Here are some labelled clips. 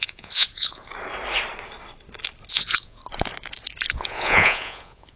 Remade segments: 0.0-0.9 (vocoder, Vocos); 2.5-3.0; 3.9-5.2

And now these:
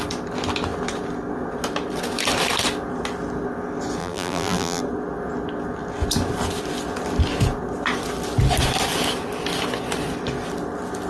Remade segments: 4.0-4.8 (vocoder, BigVGAN v2)

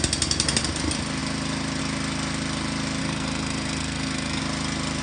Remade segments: 3.0-4.4 (codec, SNAC)